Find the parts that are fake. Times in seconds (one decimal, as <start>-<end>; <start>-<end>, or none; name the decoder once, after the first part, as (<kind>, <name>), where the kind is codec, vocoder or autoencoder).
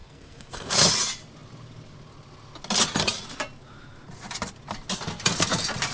0.0-0.7 (codec, SNAC)